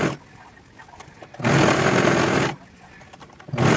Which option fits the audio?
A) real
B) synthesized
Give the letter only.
A